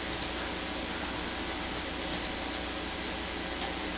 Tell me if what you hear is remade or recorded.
recorded